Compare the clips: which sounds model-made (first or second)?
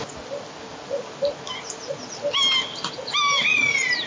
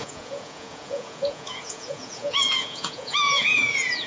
second